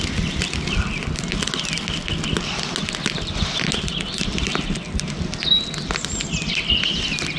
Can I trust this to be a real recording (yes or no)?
yes